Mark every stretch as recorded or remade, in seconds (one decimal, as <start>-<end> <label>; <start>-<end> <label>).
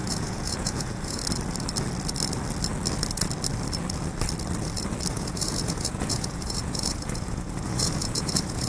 0.0-1.2 remade; 1.2-5.1 recorded; 5.1-8.7 remade